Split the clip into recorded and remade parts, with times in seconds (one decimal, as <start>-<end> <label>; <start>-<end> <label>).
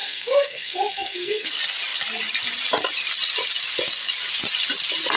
0.0-1.5 remade; 1.5-5.2 recorded